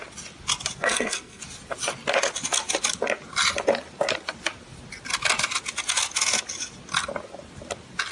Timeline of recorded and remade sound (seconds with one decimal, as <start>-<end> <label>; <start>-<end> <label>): 0.0-0.8 recorded; 0.8-1.4 remade; 1.4-8.1 recorded